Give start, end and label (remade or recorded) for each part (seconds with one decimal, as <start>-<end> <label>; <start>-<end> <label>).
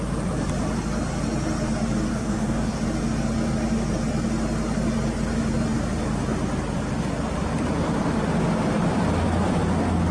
0.0-2.1 recorded; 2.1-2.8 remade; 2.8-10.1 recorded